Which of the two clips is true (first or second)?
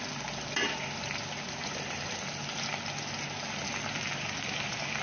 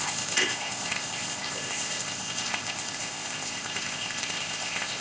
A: first